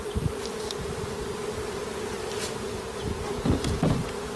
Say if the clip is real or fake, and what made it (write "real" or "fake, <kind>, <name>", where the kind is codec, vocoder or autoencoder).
real